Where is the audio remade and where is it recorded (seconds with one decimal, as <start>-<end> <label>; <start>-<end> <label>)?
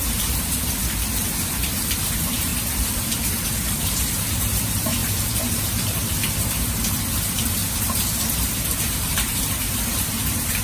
0.0-0.8 remade; 0.8-1.5 recorded; 1.5-10.6 remade